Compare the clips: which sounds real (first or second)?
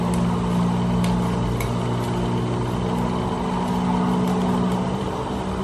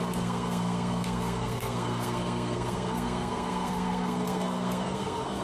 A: first